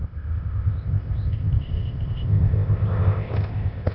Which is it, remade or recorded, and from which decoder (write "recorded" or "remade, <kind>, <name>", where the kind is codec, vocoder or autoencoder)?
remade, codec, ZipCodec